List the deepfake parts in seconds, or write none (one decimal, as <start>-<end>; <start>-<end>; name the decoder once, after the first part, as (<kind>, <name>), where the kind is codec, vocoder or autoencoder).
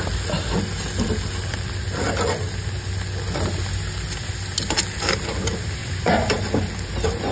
5.8-6.4 (vocoder, BigVGAN v2)